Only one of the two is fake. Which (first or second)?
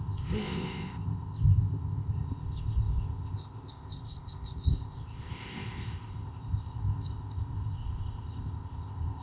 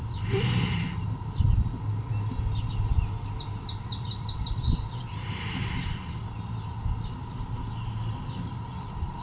first